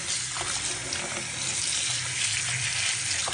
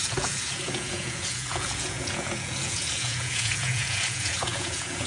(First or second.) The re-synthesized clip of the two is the second